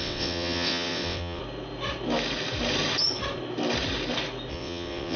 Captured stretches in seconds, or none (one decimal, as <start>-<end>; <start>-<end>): 1.4-4.5